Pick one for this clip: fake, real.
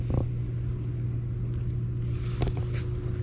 real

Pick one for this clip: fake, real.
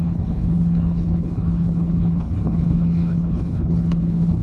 fake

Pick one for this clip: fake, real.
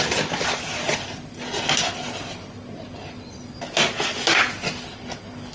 real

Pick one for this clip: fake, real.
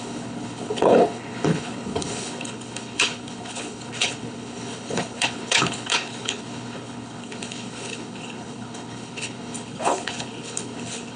fake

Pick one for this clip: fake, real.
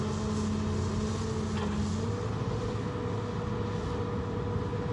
real